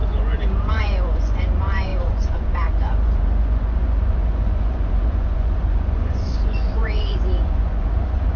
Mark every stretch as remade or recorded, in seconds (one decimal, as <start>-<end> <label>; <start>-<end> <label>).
0.0-8.4 remade